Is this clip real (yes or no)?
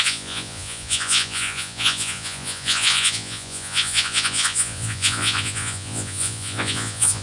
no